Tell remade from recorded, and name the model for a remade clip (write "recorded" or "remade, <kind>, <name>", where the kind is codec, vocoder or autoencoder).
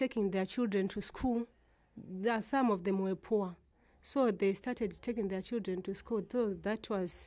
recorded